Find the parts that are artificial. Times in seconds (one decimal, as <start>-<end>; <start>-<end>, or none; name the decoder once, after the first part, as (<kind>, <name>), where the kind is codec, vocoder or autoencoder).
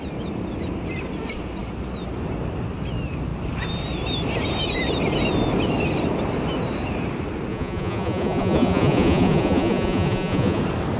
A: 7.5-10.6 (vocoder, Vocos)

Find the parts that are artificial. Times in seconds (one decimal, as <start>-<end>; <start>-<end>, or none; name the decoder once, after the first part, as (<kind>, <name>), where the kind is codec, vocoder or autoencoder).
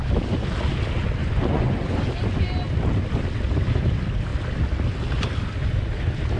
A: 1.2-2.0 (vocoder, Vocos)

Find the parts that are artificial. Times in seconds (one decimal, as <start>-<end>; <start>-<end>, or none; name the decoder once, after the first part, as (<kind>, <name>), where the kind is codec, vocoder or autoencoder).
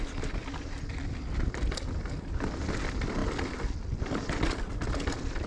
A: none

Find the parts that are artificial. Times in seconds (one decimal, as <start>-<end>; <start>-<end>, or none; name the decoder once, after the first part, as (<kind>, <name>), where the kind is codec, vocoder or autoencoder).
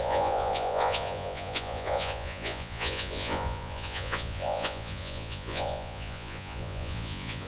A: 0.0-7.5 (vocoder, Vocos)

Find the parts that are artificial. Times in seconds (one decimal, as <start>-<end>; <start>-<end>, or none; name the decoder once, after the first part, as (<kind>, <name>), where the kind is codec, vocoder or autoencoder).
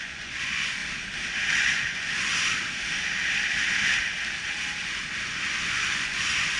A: 0.0-0.8 (vocoder, Vocos); 1.6-2.3; 4.8-6.6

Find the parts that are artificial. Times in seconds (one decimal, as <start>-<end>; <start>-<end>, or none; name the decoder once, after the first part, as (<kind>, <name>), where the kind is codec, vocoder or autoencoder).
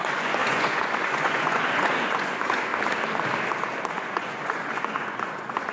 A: 0.0-2.7 (vocoder, Vocos); 3.9-5.7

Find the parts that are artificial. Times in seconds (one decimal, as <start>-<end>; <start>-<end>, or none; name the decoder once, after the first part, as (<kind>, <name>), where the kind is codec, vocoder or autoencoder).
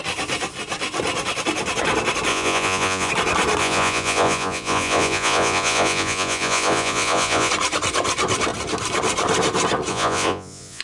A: 2.3-3.1 (vocoder, Vocos); 3.6-7.5; 9.9-10.8